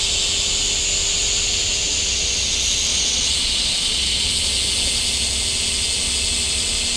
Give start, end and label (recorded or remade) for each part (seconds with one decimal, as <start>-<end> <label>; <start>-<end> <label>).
0.0-2.9 recorded; 2.9-4.3 remade; 4.3-7.0 recorded